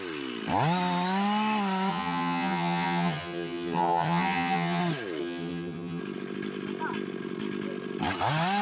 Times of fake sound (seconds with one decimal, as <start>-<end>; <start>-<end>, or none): 1.9-4.8; 5.2-6.0